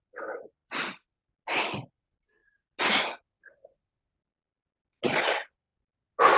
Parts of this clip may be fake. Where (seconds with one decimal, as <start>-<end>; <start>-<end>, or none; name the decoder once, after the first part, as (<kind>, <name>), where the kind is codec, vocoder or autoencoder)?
none